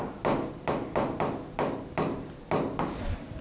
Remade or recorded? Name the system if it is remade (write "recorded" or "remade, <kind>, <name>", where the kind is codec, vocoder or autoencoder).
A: recorded